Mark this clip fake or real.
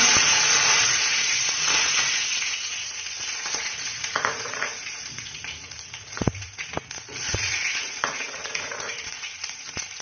fake